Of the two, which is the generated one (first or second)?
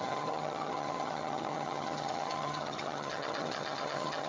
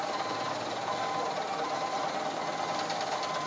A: first